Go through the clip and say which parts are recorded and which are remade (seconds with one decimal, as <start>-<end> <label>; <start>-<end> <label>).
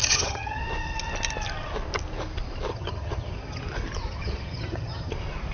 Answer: 0.0-0.6 remade; 0.6-2.7 recorded; 2.7-3.6 remade; 3.6-4.1 recorded; 4.1-5.1 remade; 5.1-5.5 recorded